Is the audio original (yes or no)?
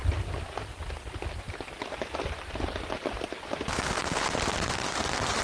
yes